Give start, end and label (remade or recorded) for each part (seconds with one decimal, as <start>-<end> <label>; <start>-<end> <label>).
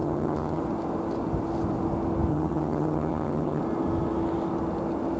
0.0-0.6 remade; 0.6-2.3 recorded; 2.3-3.6 remade; 3.6-5.2 recorded